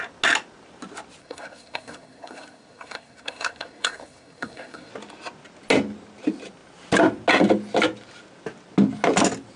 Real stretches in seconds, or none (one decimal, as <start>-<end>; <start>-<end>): 0.0-1.2; 4.9-9.6